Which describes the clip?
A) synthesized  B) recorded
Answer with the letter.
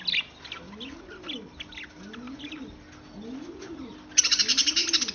B